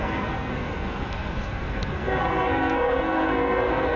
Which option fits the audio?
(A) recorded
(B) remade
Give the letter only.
B